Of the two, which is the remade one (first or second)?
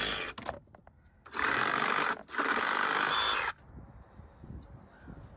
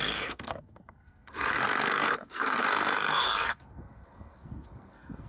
second